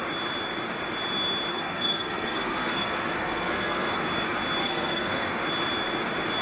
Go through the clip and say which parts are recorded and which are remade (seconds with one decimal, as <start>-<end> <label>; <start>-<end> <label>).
0.0-1.5 recorded; 1.5-4.0 remade; 4.0-4.6 recorded; 4.6-5.4 remade; 5.4-6.4 recorded